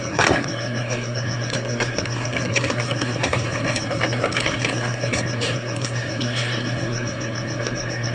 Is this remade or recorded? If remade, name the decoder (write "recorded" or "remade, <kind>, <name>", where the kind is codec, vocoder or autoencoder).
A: remade, codec, SNAC